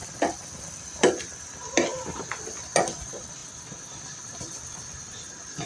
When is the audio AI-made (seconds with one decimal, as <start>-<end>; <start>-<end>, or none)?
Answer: none